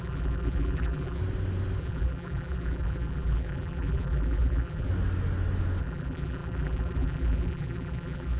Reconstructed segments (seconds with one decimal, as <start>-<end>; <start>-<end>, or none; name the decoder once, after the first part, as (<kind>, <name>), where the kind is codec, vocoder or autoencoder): 0.0-1.2 (vocoder, BigVGAN v2); 1.8-4.9; 5.8-8.4